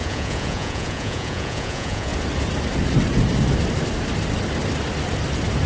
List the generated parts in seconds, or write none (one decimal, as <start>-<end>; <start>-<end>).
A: 0.0-2.1